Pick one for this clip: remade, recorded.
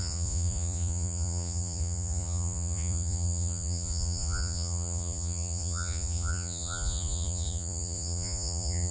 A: remade